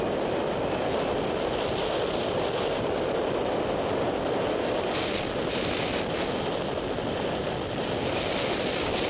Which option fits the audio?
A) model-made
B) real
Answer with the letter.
B